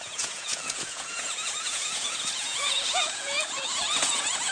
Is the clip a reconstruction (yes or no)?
yes